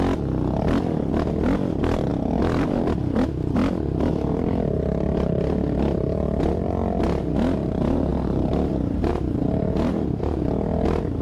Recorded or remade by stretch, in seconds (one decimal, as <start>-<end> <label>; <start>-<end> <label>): 0.0-8.1 recorded; 8.1-8.7 remade; 8.7-9.1 recorded; 9.1-10.4 remade; 10.4-11.2 recorded